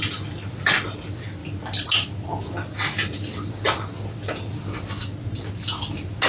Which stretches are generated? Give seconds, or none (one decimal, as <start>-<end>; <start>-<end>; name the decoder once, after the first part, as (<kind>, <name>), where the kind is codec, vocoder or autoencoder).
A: none